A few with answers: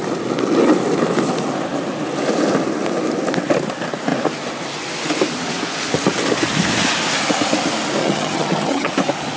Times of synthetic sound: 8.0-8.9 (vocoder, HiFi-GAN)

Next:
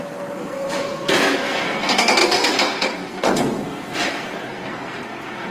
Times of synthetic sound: 0.0-5.5 (codec, SNAC)

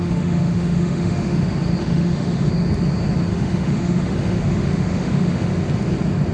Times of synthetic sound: 0.0-1.4 (autoencoder, DAC-VAE); 1.8-2.5; 3.3-5.5

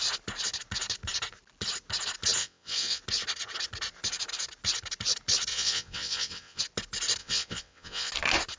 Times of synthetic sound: 2.4-3.0 (vocoder, WaveNeXt); 5.5-6.6; 7.2-8.1

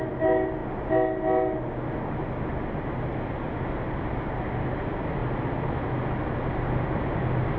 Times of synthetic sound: none